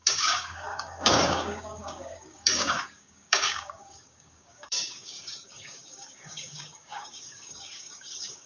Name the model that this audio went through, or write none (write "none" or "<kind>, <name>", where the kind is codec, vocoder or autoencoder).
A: codec, DAC